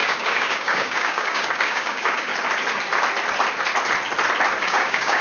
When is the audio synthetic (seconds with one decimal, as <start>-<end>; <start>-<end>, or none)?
0.0-2.3; 4.6-5.2

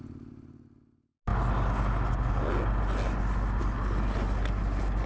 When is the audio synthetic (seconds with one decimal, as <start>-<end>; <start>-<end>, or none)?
none

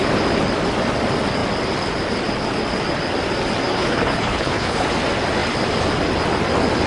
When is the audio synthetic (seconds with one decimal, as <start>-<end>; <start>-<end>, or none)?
3.7-4.9

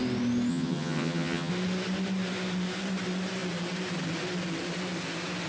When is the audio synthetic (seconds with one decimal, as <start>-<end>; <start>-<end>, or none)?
0.5-1.5

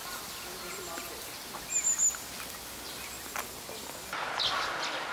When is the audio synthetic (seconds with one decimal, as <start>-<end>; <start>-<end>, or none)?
none